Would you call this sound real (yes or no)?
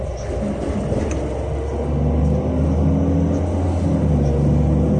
yes